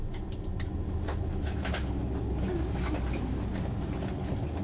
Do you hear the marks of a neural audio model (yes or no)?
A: no